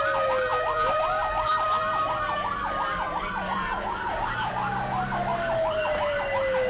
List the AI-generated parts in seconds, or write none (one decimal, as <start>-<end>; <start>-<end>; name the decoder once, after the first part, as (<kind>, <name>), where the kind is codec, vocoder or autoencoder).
0.5-4.5 (vocoder, BigVGAN v2); 5.3-6.2